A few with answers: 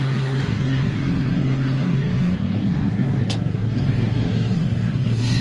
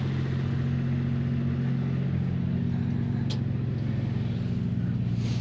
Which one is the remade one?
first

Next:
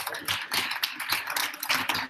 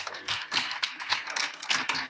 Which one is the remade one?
second